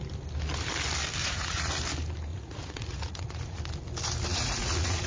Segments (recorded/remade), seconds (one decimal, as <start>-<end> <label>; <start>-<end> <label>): 0.0-1.2 recorded; 1.2-1.7 remade; 1.7-2.3 recorded; 2.3-3.6 remade; 3.6-4.3 recorded; 4.3-5.1 remade